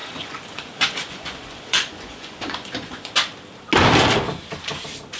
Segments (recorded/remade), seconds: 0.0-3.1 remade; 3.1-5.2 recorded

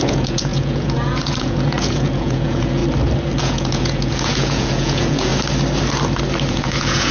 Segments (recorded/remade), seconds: 0.0-2.8 remade; 2.8-3.4 recorded; 3.4-5.3 remade; 5.3-6.5 recorded; 6.5-7.1 remade

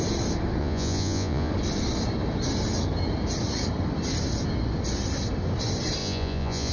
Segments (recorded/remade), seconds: 0.0-0.6 recorded; 0.6-1.5 remade; 1.5-6.0 recorded; 6.0-6.7 remade

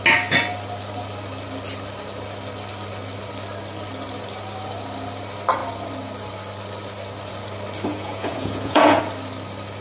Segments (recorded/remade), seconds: 0.0-7.9 recorded; 7.9-9.0 remade; 9.0-9.8 recorded

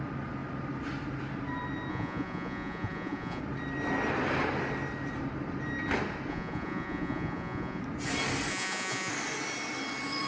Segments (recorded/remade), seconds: 0.0-1.9 recorded; 1.9-3.4 remade; 3.4-6.3 recorded; 6.3-7.8 remade; 7.8-8.5 recorded; 8.5-9.1 remade; 9.1-10.3 recorded